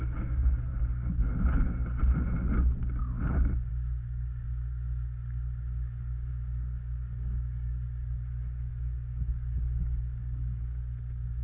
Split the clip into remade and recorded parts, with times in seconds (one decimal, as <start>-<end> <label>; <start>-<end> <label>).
0.0-0.7 remade; 0.7-3.7 recorded; 3.7-11.4 remade